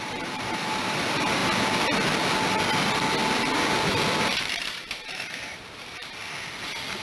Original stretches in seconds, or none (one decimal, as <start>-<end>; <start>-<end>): 1.4-4.4; 6.2-7.0